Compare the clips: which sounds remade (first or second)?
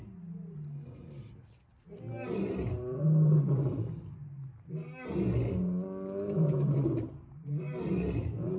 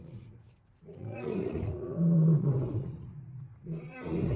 second